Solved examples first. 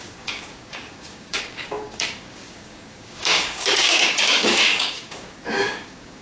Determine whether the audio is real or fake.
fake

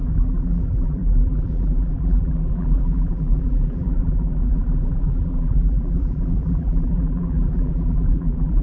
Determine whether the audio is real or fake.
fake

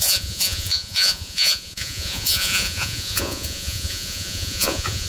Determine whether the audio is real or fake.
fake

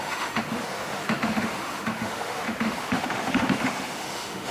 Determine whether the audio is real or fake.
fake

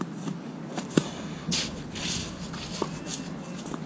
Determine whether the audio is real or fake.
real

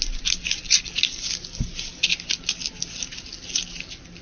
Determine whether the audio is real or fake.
real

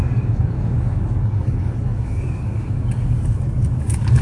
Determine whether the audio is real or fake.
fake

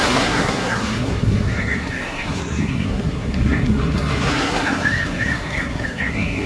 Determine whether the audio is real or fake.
fake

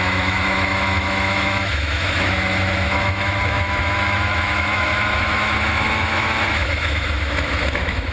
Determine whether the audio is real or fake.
fake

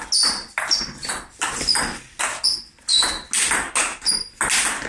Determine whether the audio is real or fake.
real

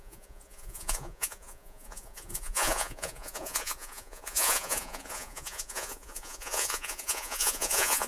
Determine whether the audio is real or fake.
fake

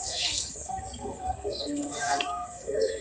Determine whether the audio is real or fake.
fake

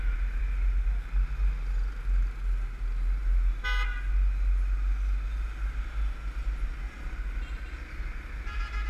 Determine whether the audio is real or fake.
real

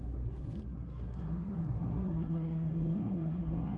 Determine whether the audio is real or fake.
fake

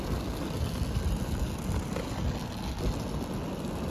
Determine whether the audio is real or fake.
real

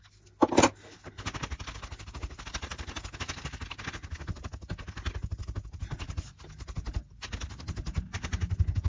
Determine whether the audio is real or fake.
real